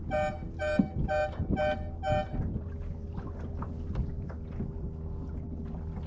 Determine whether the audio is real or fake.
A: real